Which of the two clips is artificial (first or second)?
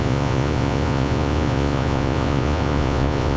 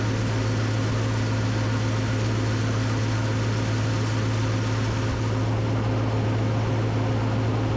first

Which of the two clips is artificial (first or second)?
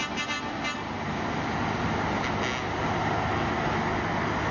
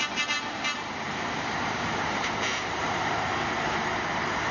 second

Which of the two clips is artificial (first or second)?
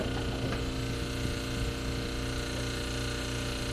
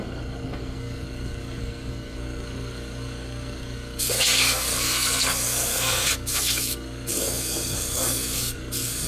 second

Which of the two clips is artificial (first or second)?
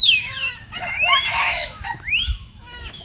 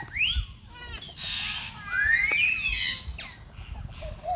first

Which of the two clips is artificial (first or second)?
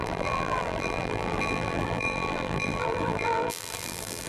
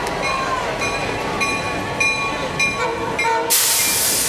first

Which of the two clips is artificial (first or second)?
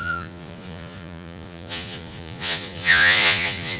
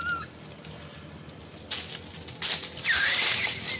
first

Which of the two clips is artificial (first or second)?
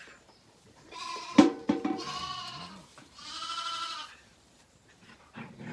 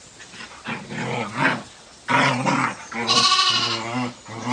first